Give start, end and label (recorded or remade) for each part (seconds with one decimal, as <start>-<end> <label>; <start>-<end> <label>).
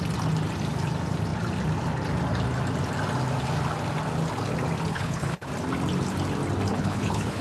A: 0.0-4.9 recorded; 4.9-5.5 remade; 5.5-6.7 recorded; 6.7-7.4 remade